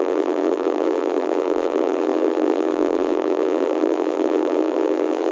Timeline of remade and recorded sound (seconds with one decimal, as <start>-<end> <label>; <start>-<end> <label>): 0.0-5.3 remade